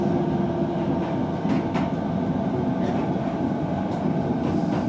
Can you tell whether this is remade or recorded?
recorded